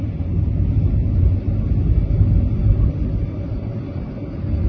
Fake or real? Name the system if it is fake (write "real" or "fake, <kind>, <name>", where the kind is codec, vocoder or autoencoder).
real